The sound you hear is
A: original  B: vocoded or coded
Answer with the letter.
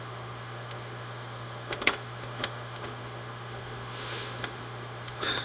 B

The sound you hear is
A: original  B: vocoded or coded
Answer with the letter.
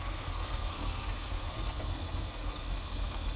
B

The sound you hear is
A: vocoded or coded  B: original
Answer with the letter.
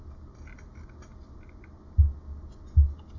B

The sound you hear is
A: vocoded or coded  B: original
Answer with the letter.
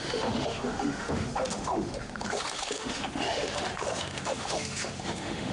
A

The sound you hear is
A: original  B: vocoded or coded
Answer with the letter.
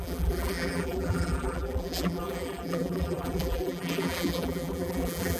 B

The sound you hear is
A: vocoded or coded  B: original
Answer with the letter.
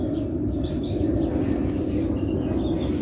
B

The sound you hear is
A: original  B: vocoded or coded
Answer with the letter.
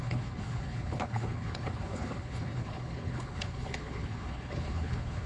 B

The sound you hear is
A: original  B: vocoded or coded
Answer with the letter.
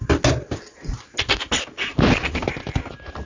A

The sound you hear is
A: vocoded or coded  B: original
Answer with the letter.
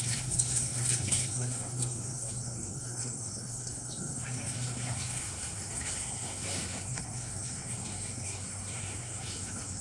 A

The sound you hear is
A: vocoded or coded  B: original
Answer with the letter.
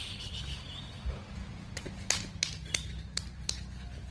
B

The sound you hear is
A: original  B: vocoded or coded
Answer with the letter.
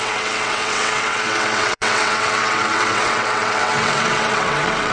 B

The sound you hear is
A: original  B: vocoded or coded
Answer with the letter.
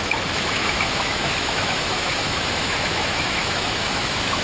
B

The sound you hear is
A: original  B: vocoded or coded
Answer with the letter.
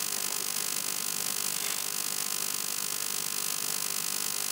B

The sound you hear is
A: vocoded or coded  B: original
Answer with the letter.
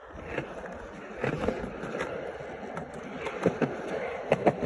B